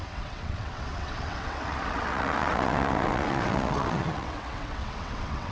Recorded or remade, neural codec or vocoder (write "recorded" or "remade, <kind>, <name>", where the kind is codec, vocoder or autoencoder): remade, vocoder, WaveNeXt